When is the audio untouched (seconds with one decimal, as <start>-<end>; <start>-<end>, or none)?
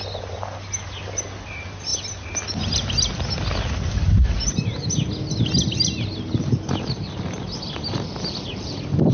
0.0-9.1